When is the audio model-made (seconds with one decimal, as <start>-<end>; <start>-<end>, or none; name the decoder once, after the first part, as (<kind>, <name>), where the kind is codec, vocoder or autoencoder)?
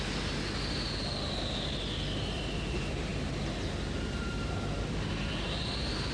none